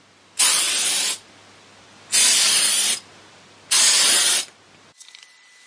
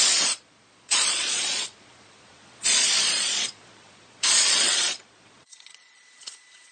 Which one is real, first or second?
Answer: first